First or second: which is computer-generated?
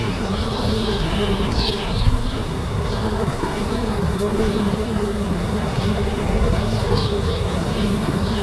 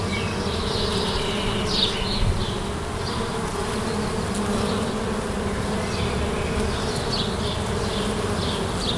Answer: first